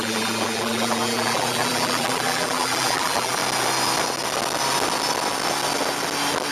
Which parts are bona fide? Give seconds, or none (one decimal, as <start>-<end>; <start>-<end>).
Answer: 3.4-6.5

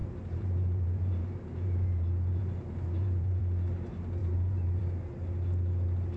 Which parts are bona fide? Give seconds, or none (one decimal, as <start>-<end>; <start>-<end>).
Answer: 3.4-4.2; 4.8-6.2

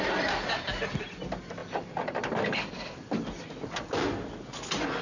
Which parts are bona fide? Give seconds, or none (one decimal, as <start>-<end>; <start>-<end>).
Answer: 0.0-5.0

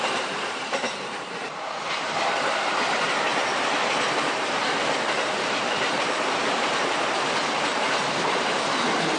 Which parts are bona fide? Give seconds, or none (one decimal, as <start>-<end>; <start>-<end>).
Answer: 3.3-4.2